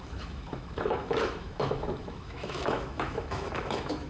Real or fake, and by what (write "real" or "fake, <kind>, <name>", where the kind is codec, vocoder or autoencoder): fake, autoencoder, DAC-VAE